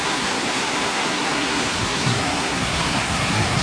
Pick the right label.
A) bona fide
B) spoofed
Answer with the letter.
B